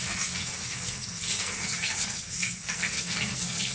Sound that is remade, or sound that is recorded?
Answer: remade